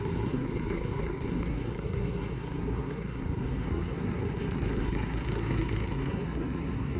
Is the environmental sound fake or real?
fake